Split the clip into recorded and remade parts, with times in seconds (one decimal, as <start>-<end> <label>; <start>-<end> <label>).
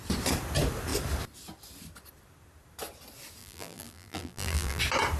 0.0-3.4 recorded; 3.4-4.8 remade; 4.8-5.2 recorded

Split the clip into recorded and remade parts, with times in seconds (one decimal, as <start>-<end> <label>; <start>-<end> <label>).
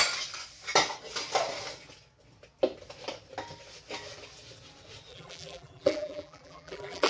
0.0-5.1 recorded; 5.1-7.1 remade